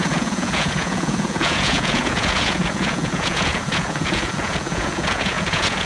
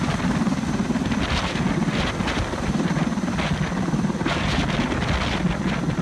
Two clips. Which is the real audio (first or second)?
second